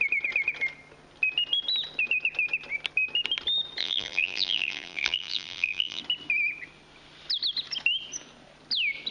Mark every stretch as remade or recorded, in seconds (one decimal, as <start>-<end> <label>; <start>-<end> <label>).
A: 0.0-3.8 recorded; 3.8-6.0 remade; 6.0-9.1 recorded

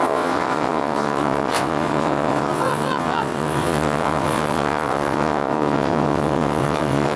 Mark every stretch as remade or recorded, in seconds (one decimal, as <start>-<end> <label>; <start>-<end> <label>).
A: 0.0-7.2 remade

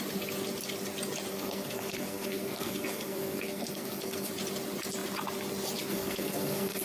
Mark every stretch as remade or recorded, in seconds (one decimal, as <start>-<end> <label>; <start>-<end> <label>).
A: 0.0-1.3 recorded; 1.3-4.3 remade; 4.3-5.9 recorded; 5.9-6.8 remade

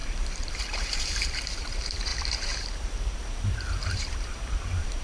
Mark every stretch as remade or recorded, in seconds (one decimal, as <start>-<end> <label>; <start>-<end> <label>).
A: 0.0-5.0 remade

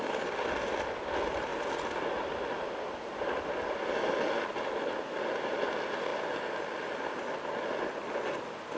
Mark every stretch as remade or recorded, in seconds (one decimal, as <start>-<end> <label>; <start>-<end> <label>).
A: 0.0-8.8 recorded

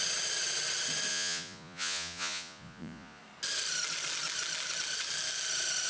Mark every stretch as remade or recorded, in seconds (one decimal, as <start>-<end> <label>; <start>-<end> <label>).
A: 0.0-1.1 recorded; 1.1-3.2 remade; 3.2-5.9 recorded

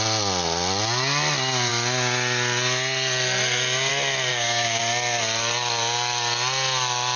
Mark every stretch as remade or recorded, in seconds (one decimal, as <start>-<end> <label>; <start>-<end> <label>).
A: 0.0-4.3 recorded; 4.3-4.8 remade; 4.8-7.2 recorded